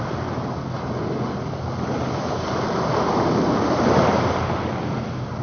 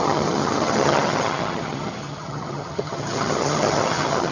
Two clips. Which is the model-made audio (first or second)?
second